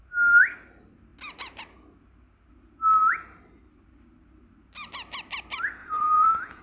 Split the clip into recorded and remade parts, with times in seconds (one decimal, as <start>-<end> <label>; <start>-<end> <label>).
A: 0.0-5.8 recorded; 5.8-6.6 remade

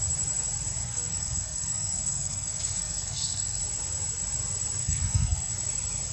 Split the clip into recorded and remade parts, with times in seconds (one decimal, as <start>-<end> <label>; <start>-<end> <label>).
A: 0.0-0.8 recorded; 0.8-3.6 remade; 3.6-4.8 recorded; 4.8-5.5 remade; 5.5-6.1 recorded

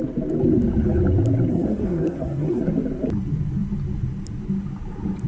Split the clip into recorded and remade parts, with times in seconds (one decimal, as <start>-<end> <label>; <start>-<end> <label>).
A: 0.0-1.5 recorded; 1.5-2.6 remade; 2.6-5.3 recorded

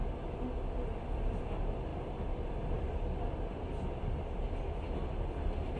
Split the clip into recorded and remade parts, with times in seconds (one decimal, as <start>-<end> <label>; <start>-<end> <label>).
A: 0.0-5.8 recorded

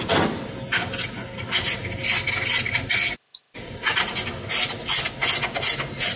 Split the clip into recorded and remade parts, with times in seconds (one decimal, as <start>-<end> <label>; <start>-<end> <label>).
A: 0.0-6.2 recorded